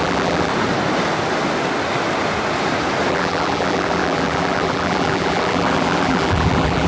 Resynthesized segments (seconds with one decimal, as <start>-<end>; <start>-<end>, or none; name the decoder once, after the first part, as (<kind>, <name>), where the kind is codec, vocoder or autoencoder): 0.0-0.5 (vocoder, BigVGAN v2); 3.1-6.9